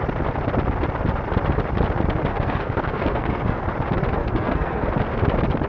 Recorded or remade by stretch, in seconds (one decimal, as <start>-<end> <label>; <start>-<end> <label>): 0.0-2.3 recorded; 2.3-3.7 remade; 3.7-4.2 recorded; 4.2-4.9 remade; 4.9-5.7 recorded